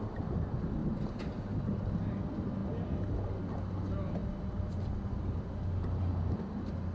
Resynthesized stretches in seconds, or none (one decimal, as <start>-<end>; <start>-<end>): 0.8-1.4; 4.2-5.1